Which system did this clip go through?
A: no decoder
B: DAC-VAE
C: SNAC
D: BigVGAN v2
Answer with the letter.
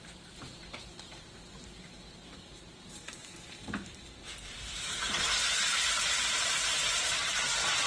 D